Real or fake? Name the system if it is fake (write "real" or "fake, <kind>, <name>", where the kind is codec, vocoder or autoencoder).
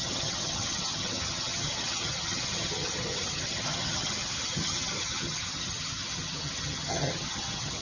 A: fake, vocoder, HiFi-GAN